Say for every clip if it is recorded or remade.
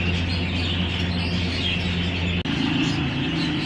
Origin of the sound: recorded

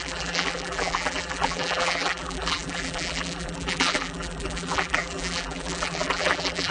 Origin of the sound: remade